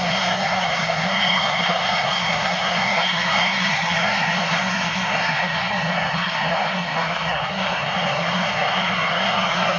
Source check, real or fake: fake